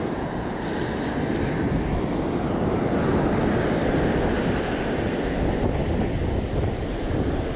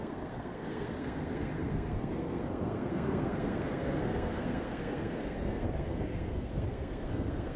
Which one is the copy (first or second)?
second